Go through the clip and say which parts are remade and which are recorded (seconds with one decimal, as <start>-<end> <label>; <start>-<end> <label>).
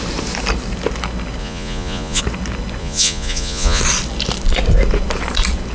0.0-1.4 recorded; 1.4-2.2 remade; 2.2-2.8 recorded; 2.8-3.8 remade; 3.8-5.7 recorded